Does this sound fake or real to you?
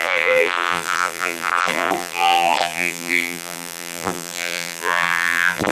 fake